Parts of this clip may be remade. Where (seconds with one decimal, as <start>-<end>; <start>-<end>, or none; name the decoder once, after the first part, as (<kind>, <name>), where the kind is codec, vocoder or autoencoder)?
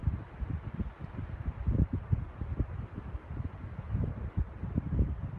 none